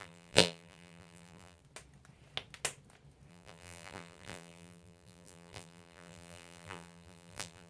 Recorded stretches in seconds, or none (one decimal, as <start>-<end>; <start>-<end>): 1.6-3.3